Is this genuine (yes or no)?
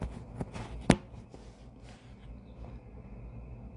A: yes